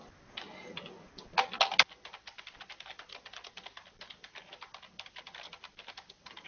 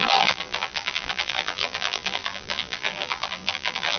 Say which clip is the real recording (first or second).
first